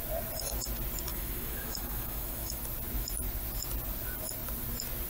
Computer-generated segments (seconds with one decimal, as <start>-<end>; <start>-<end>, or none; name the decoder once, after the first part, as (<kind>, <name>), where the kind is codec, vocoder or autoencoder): 1.1-2.6 (autoencoder, DAC-VAE)